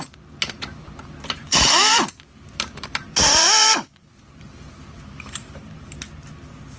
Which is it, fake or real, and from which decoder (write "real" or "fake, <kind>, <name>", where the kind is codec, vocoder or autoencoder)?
fake, vocoder, BigVGAN v2